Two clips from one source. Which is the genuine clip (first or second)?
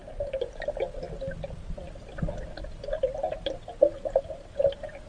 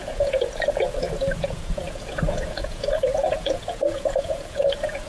first